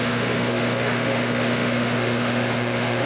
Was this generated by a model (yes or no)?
yes